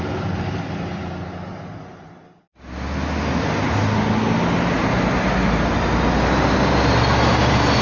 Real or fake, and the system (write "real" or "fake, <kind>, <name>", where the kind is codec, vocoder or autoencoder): real